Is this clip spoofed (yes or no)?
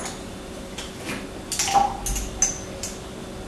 no